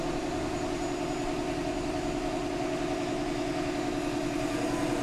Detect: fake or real real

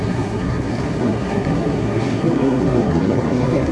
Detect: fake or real fake